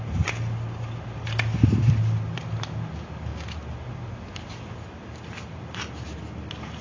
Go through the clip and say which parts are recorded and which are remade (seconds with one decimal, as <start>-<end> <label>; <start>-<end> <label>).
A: 0.0-6.8 recorded